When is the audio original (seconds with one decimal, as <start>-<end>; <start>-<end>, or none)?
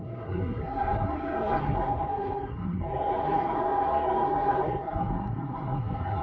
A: none